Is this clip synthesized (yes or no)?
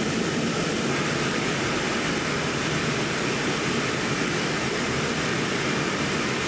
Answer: yes